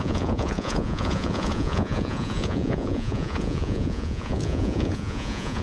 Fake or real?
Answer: fake